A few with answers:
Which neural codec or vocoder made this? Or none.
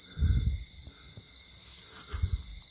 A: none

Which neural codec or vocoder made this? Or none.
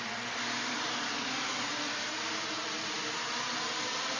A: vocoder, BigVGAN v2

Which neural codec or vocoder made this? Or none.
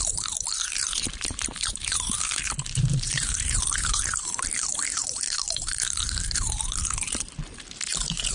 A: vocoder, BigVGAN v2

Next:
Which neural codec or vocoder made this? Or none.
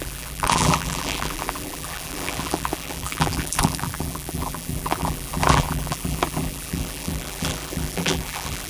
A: vocoder, BigVGAN v2